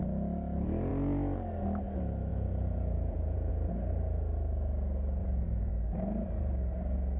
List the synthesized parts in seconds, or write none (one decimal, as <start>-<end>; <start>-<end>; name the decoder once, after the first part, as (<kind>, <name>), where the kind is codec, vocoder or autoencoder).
2.3-3.5 (vocoder, Vocos); 5.2-5.7